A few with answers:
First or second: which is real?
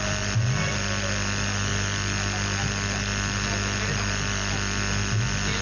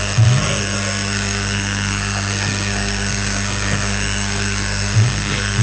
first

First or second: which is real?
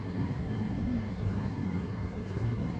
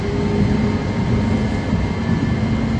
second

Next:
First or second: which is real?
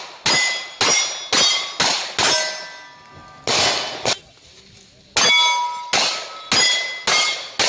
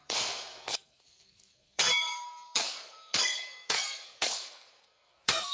first